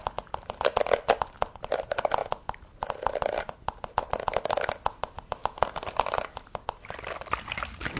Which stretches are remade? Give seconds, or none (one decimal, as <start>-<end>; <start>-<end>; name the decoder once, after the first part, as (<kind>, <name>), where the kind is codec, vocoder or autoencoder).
none